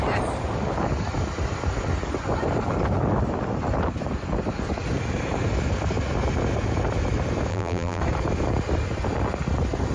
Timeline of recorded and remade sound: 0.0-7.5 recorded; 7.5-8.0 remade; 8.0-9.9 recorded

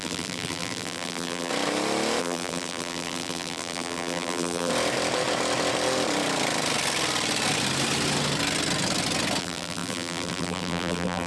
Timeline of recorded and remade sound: 0.0-1.5 remade; 1.5-2.2 recorded; 2.2-4.7 remade; 4.7-9.4 recorded; 9.4-11.3 remade

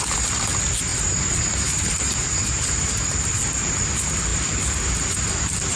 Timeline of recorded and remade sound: 0.0-0.9 recorded; 0.9-3.3 remade; 3.3-5.8 recorded

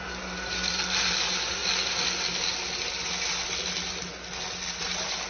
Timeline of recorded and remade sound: 0.0-1.6 remade; 1.6-4.8 recorded; 4.8-5.3 remade

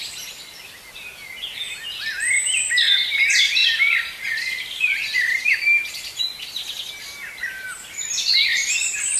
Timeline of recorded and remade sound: 0.0-3.6 recorded; 3.6-6.2 remade; 6.2-8.5 recorded; 8.5-9.2 remade

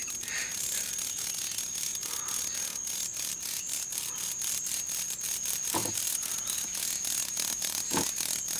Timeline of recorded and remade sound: 0.0-5.8 recorded; 5.8-6.3 remade; 6.3-8.6 recorded

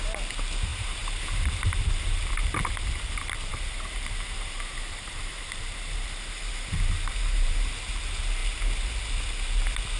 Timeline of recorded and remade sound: 0.0-0.7 recorded; 0.7-2.2 remade; 2.2-3.5 recorded; 3.5-7.7 remade; 7.7-10.0 recorded